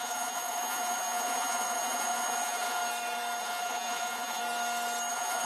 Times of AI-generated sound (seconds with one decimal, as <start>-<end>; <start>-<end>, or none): 0.0-2.8; 3.4-4.4; 5.1-5.5